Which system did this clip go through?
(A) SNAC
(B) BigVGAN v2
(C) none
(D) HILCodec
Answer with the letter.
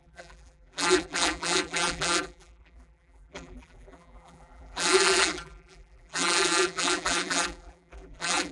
B